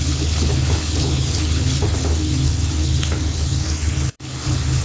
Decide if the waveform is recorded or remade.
remade